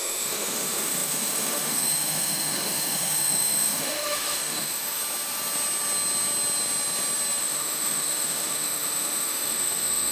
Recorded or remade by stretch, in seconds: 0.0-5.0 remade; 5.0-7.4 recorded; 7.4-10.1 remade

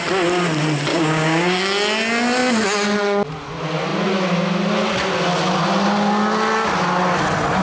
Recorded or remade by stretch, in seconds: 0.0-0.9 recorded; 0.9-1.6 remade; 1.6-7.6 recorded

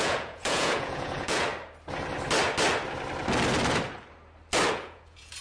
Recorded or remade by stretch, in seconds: 0.0-1.5 remade; 1.5-4.7 recorded; 4.7-5.4 remade

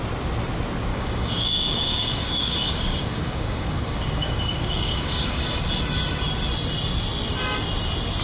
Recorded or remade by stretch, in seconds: 0.0-0.9 recorded; 0.9-5.7 remade; 5.7-8.2 recorded

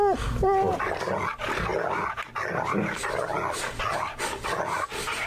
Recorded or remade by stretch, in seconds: 0.0-5.3 recorded